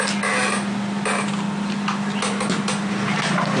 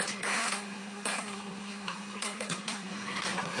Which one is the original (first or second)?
first